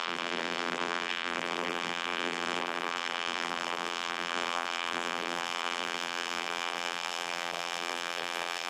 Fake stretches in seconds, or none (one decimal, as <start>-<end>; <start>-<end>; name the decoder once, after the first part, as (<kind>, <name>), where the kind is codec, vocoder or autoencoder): 0.0-8.7 (vocoder, BigVGAN v2)